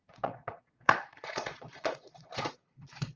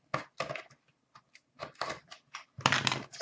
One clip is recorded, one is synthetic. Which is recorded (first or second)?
second